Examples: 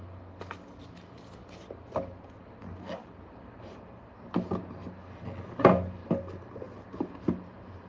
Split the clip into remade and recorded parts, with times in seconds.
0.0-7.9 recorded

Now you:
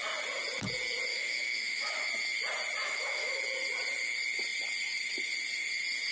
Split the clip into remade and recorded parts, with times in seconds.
0.0-1.1 recorded; 1.1-2.1 remade; 2.1-2.8 recorded; 2.8-3.4 remade; 3.4-6.1 recorded

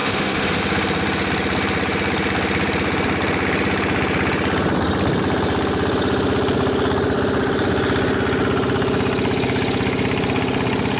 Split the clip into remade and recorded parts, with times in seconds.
0.0-0.6 remade; 0.6-11.0 recorded

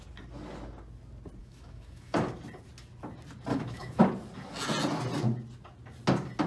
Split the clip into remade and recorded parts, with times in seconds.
0.0-1.4 recorded; 1.4-2.2 remade; 2.2-3.5 recorded; 3.5-4.0 remade; 4.0-6.5 recorded

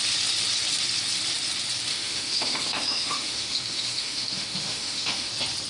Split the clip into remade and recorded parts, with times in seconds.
0.0-1.9 recorded; 1.9-5.3 remade; 5.3-5.7 recorded

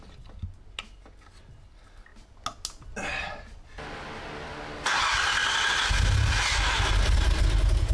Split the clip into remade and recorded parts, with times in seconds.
0.0-7.9 recorded

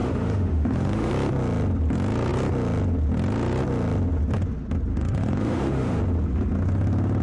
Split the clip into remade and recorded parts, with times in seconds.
0.0-1.1 remade; 1.1-4.9 recorded; 4.9-6.0 remade; 6.0-7.2 recorded